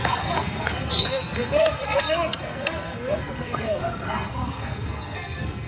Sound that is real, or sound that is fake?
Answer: fake